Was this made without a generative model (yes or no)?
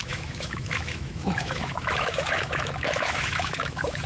no